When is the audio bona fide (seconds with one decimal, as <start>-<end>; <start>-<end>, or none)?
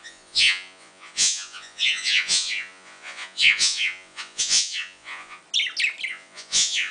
5.4-6.1